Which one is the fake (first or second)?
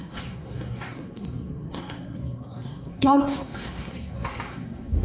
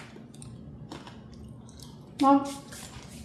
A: first